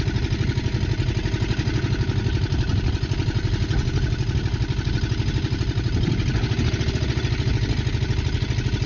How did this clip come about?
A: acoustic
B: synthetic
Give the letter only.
A